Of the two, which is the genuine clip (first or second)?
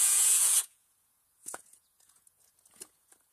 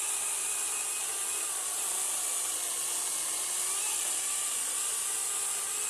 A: second